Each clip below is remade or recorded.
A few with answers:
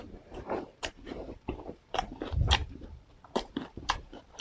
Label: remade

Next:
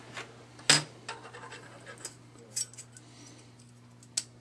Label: recorded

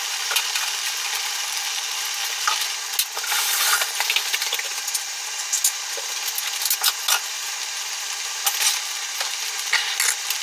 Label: recorded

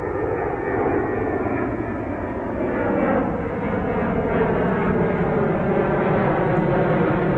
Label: recorded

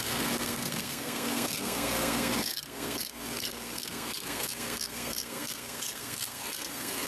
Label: remade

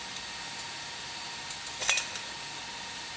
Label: recorded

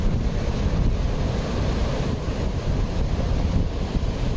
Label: recorded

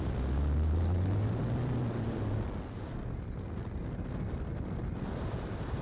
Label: recorded